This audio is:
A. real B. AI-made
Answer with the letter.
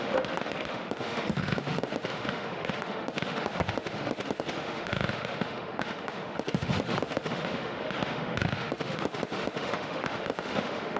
B